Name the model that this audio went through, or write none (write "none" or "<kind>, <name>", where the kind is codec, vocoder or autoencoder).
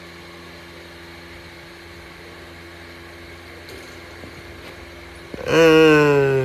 none